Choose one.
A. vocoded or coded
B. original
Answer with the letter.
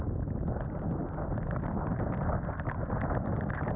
B